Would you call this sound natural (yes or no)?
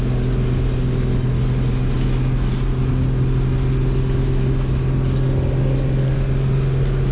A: yes